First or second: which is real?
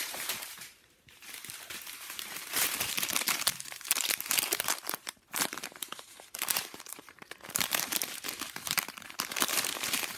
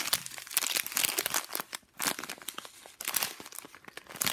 second